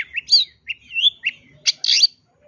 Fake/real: real